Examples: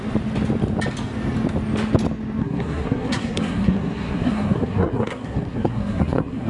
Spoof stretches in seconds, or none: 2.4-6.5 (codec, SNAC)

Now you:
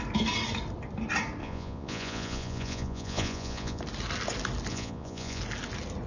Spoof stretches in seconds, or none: 1.4-3.8 (vocoder, Vocos); 4.7-5.4

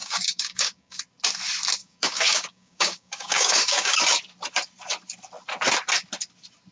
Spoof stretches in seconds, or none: 0.0-1.0 (codec, DAC); 1.8-4.0

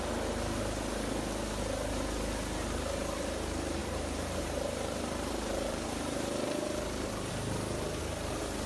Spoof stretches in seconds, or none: 3.8-8.0 (vocoder, BigVGAN v2)